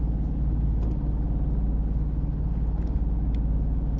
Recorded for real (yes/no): yes